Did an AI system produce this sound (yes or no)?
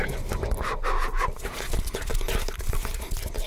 no